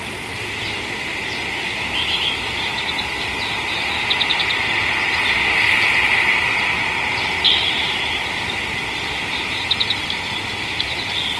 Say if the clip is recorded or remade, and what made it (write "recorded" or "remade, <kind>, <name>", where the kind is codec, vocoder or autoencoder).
recorded